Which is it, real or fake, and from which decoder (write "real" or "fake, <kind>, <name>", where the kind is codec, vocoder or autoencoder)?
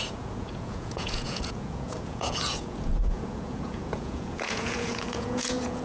fake, vocoder, Vocos